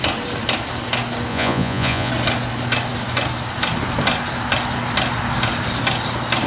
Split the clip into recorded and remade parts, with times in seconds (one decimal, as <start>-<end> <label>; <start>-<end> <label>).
0.0-1.3 recorded; 1.3-2.1 remade; 2.1-6.5 recorded